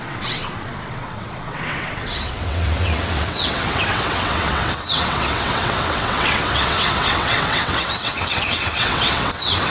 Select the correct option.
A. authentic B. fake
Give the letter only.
B